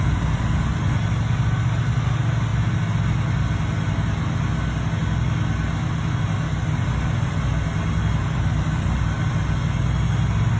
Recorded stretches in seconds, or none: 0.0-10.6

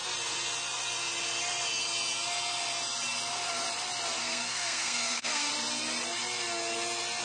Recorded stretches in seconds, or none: 0.0-4.2; 5.5-7.2

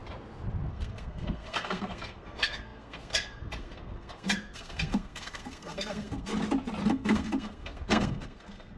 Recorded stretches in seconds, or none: 0.0-0.7; 6.3-6.9